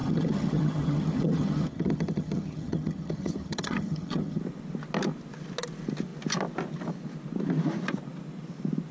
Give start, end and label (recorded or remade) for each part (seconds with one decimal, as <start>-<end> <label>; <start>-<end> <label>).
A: 0.0-4.4 remade; 4.4-8.9 recorded